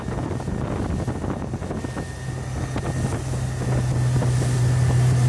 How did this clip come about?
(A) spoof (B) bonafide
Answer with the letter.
B